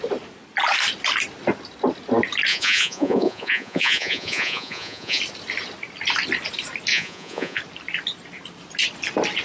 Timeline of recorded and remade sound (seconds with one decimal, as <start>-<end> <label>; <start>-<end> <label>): 0.0-2.5 recorded; 2.5-5.2 remade; 5.2-6.9 recorded; 6.9-7.6 remade; 7.6-9.4 recorded